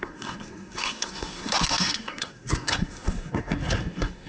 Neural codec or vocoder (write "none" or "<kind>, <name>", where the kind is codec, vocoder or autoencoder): codec, SNAC